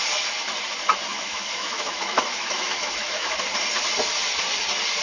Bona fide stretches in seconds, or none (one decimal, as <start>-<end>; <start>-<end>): 0.0-1.1; 3.4-5.0